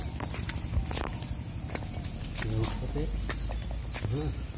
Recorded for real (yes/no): yes